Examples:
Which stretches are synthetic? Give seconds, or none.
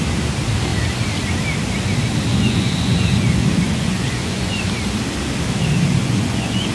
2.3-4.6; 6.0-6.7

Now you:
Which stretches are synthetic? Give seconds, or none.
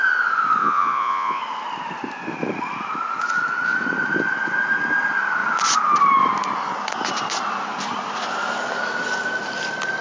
0.6-1.4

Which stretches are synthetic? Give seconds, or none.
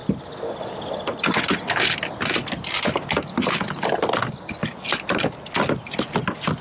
4.6-5.5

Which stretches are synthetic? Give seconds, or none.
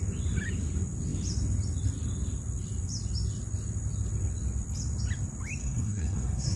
5.6-6.6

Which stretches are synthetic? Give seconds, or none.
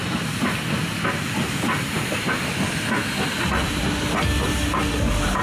none